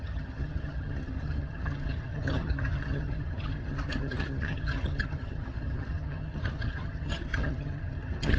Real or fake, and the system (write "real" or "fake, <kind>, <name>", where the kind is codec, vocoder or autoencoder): fake, vocoder, HiFi-GAN